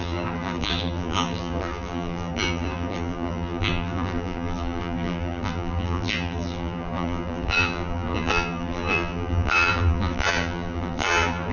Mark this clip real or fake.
fake